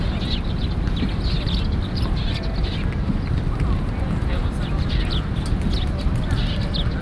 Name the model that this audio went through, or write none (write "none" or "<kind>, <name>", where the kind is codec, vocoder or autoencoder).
none